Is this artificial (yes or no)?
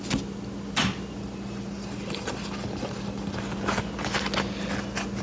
no